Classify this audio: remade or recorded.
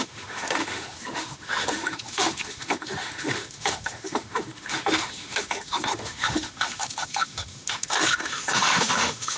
remade